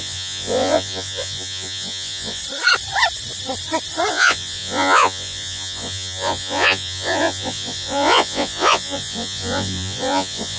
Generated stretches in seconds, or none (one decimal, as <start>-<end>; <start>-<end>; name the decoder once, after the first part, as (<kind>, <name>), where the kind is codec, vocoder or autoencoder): 0.0-2.4 (vocoder, Vocos); 4.1-10.6